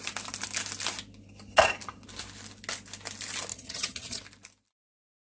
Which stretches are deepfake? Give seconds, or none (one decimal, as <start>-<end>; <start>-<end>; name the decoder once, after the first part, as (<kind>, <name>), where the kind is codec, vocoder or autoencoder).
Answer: 3.5-4.2 (vocoder, HiFi-GAN)